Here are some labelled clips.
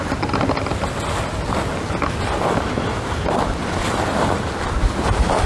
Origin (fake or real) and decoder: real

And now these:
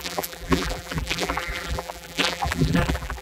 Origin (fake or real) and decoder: fake, vocoder, BigVGAN v2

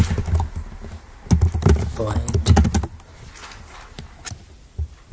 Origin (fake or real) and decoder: real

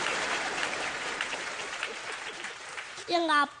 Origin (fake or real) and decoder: fake, vocoder, BigVGAN v2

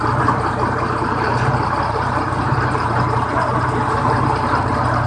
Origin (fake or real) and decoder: fake, vocoder, BigVGAN v2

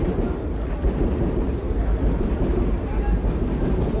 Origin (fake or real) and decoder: fake, vocoder, BigVGAN v2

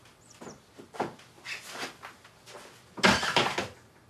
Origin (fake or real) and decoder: real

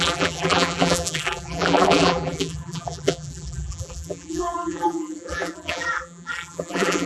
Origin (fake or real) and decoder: fake, vocoder, BigVGAN v2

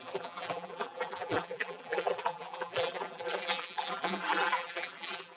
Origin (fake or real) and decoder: fake, vocoder, BigVGAN v2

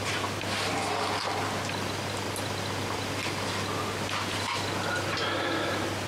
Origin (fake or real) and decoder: real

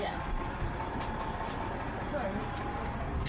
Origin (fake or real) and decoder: real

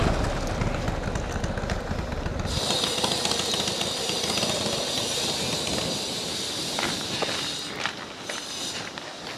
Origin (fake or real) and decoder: real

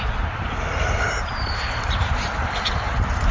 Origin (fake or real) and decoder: fake, vocoder, BigVGAN v2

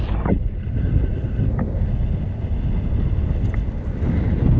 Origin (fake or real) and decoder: real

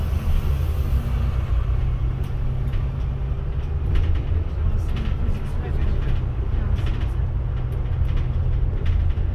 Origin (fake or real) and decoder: real